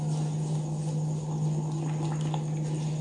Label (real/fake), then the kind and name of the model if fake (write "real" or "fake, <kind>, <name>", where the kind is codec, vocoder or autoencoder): real